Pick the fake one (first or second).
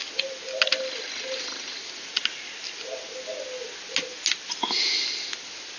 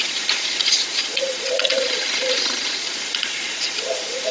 second